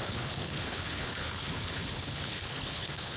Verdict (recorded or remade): remade